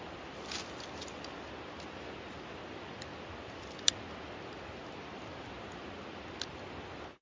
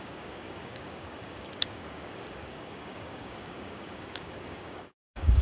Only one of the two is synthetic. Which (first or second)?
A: second